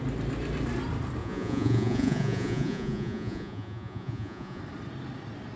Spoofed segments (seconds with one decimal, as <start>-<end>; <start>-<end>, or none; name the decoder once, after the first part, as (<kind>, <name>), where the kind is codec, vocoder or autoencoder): 1.2-4.6 (vocoder, Vocos)